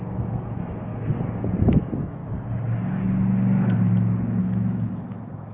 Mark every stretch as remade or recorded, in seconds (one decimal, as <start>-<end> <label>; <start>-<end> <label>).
0.0-0.9 remade; 0.9-1.6 recorded; 1.6-2.2 remade; 2.2-4.4 recorded; 4.4-5.5 remade